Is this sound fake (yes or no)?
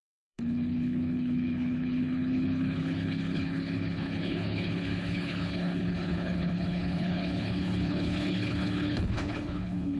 yes